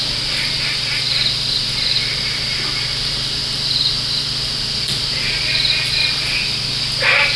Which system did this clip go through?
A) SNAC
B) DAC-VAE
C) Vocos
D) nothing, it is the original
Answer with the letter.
D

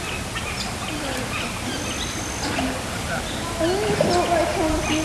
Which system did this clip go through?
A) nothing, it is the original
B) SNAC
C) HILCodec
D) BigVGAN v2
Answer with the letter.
A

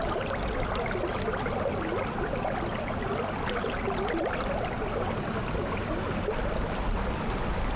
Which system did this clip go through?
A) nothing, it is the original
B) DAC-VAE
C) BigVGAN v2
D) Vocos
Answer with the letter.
A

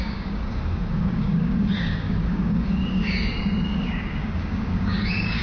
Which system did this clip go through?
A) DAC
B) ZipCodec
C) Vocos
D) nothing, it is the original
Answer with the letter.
A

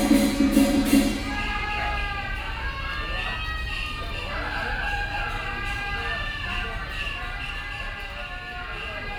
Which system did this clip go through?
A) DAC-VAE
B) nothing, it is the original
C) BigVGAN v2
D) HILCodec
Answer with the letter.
B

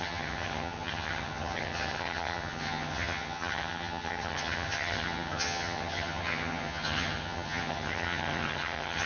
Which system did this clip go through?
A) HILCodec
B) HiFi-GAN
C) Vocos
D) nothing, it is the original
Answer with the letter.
B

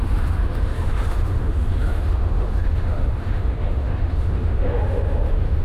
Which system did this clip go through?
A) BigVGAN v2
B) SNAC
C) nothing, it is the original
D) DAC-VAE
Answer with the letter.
D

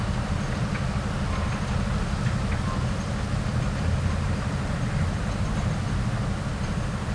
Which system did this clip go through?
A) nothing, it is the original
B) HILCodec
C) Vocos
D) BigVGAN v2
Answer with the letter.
A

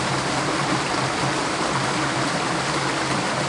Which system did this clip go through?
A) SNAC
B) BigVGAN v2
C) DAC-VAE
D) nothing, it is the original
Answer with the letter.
D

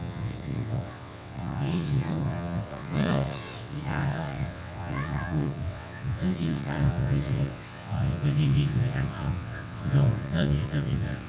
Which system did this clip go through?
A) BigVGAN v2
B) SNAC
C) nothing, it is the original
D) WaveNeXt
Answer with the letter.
D